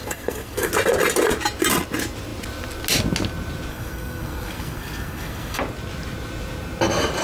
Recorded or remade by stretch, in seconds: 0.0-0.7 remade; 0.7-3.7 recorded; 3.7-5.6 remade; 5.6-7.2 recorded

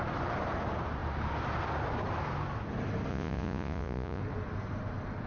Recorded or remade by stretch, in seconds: 0.0-3.1 recorded; 3.1-4.2 remade; 4.2-5.3 recorded

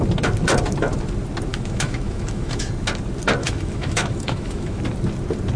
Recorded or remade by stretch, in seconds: 0.0-1.5 recorded; 1.5-2.7 remade; 2.7-3.4 recorded; 3.4-4.8 remade; 4.8-5.6 recorded